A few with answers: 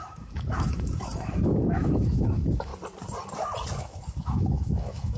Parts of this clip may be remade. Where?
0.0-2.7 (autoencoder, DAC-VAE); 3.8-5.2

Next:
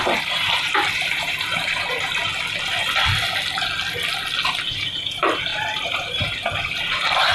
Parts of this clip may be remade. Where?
0.0-2.2 (vocoder, BigVGAN v2); 4.5-7.3

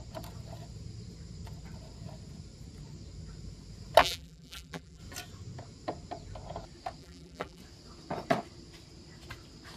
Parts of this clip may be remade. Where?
4.0-5.0 (vocoder, BigVGAN v2); 7.0-7.6

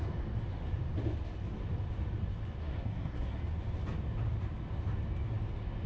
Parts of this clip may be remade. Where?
2.6-3.4 (codec, SNAC)